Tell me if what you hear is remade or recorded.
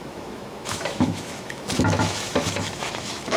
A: remade